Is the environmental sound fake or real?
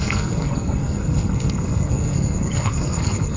fake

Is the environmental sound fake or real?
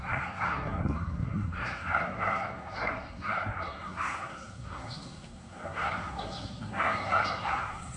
fake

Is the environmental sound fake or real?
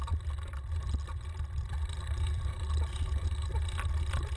real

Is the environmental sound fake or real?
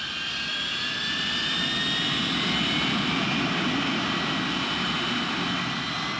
real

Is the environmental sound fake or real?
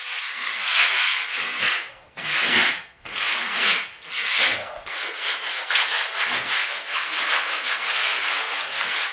fake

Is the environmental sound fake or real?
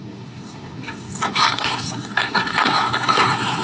fake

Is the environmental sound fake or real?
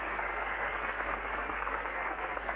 fake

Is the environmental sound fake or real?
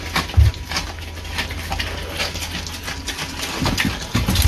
real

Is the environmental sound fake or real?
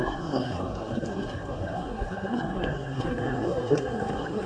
fake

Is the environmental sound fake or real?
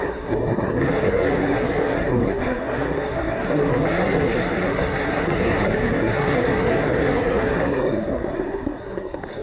fake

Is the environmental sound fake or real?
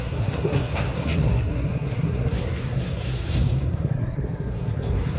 fake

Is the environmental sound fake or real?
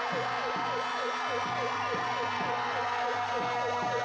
real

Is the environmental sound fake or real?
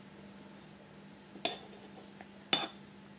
real